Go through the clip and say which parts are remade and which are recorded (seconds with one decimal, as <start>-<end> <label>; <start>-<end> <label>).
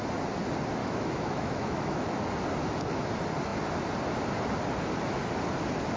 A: 0.0-0.8 recorded; 0.8-2.1 remade; 2.1-6.0 recorded